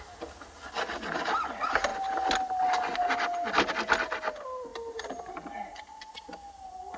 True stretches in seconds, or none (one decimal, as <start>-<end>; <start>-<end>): 0.0-4.7; 5.3-7.0